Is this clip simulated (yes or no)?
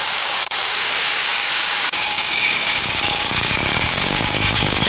yes